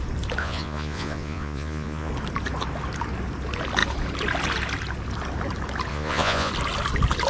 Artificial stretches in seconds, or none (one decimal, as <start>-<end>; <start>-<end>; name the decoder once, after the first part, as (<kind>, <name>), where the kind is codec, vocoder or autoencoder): 0.4-2.1 (vocoder, Vocos); 5.9-6.5